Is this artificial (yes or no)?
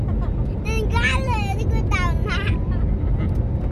no